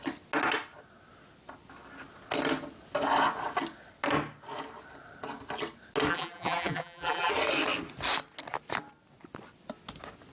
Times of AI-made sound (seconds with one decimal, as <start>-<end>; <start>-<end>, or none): 6.1-7.3